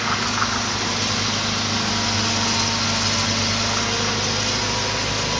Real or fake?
real